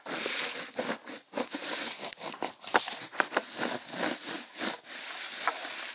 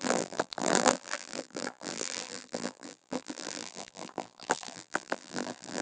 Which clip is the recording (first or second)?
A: first